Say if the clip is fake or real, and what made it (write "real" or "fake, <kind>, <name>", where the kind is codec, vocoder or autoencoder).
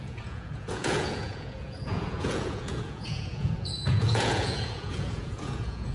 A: fake, vocoder, Vocos